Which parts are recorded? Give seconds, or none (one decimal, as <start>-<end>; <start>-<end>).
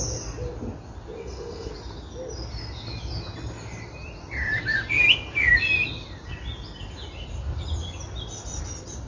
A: 0.0-1.2; 1.7-9.1